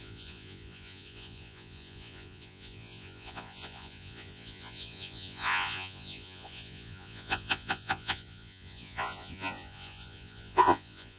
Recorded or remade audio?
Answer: remade